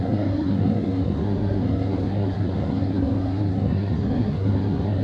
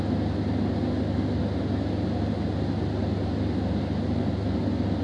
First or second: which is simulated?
first